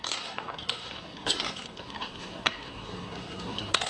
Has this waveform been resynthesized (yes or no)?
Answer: yes